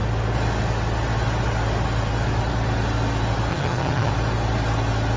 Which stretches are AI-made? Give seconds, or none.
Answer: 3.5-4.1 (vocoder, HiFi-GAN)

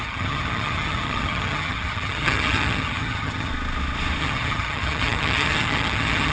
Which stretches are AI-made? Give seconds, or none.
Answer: 0.0-3.5 (vocoder, HiFi-GAN); 4.2-6.3

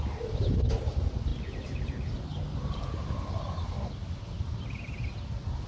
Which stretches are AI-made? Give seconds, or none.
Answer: none

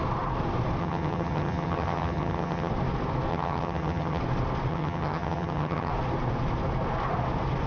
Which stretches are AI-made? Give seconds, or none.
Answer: 0.8-2.7 (vocoder, HiFi-GAN); 3.3-4.2; 4.7-5.9

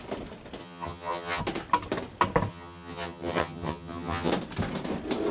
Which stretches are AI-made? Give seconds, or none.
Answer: 0.6-1.4 (vocoder, HiFi-GAN); 2.5-4.3

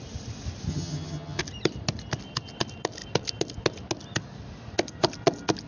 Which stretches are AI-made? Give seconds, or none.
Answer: 0.7-1.4 (vocoder, HiFi-GAN)

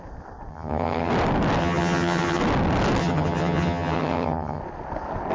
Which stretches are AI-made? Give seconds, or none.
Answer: 0.5-1.1 (vocoder, HiFi-GAN); 1.6-2.4; 3.0-4.6

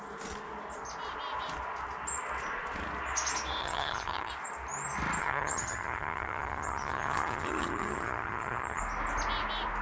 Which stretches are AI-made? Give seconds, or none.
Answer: 3.6-4.3 (vocoder, HiFi-GAN); 5.2-8.8